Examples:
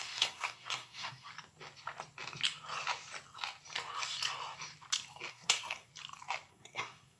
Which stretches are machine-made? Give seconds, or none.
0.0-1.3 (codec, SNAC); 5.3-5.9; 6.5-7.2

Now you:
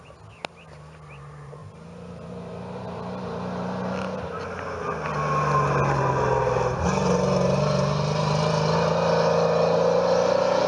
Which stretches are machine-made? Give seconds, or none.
none